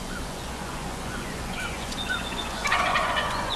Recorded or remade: remade